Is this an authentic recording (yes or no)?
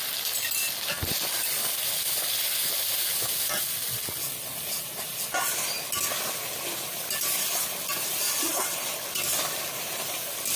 yes